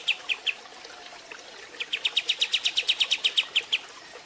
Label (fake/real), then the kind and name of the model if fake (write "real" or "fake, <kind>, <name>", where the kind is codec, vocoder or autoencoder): real